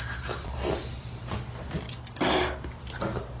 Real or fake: real